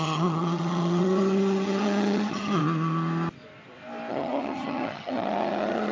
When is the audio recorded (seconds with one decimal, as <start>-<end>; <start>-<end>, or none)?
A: 2.6-4.1